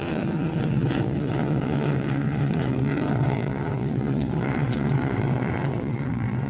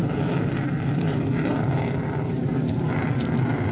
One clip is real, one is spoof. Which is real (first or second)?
second